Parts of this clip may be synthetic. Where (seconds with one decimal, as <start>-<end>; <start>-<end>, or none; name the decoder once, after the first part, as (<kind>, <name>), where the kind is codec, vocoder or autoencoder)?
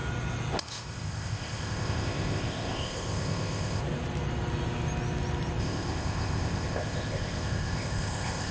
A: 0.6-3.8 (codec, ZipCodec); 5.6-8.5